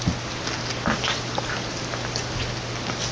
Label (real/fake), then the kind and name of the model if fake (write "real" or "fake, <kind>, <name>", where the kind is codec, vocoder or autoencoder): real